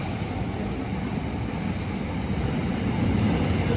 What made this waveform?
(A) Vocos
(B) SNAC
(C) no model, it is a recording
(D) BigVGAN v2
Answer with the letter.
C